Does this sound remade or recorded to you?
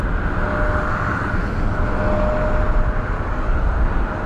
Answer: recorded